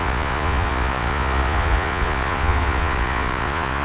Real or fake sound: fake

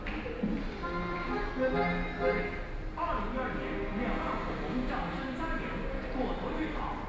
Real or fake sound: real